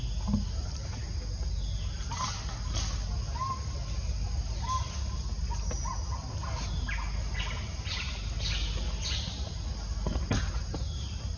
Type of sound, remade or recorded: recorded